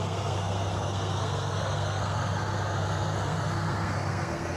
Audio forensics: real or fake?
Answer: fake